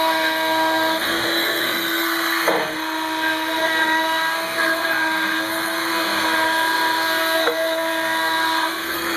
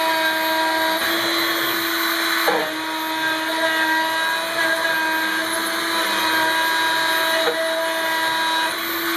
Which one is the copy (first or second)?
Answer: first